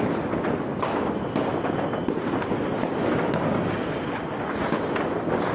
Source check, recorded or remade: recorded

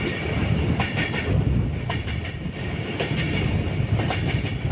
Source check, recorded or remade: recorded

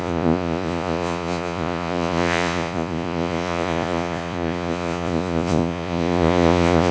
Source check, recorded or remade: remade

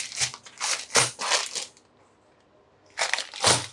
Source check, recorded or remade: recorded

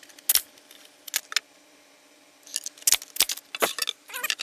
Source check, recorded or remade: recorded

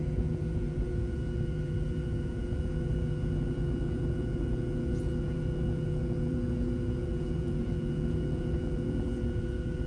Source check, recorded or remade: remade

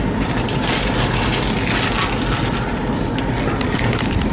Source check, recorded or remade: recorded